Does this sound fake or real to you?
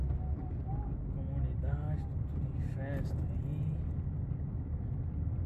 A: real